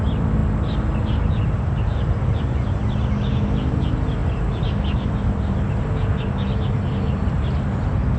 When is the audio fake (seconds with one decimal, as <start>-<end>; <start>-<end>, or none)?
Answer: none